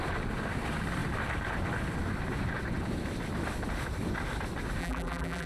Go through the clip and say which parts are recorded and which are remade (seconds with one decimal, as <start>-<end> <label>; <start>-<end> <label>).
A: 0.0-4.8 recorded; 4.8-5.5 remade